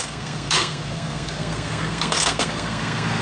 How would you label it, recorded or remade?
remade